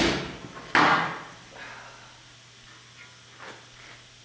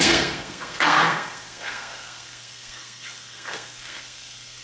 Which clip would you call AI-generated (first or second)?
second